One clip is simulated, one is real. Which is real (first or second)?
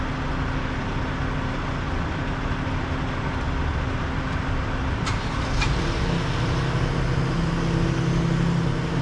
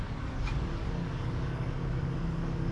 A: first